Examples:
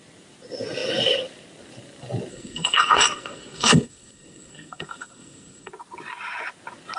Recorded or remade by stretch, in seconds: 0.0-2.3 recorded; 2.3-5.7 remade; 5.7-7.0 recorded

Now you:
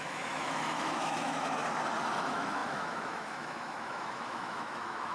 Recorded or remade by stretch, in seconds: 0.0-1.6 remade; 1.6-2.1 recorded; 2.1-5.1 remade

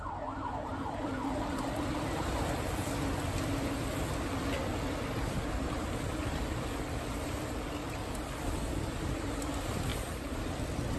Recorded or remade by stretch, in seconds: 0.0-9.9 recorded; 9.9-10.4 remade; 10.4-11.0 recorded

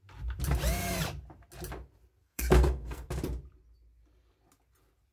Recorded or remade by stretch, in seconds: 0.0-2.2 recorded; 2.2-3.1 remade; 3.1-5.1 recorded

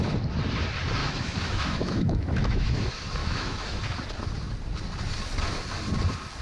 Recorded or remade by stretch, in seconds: 0.0-1.0 recorded; 1.0-2.8 remade; 2.8-3.2 recorded; 3.2-3.8 remade; 3.8-6.4 recorded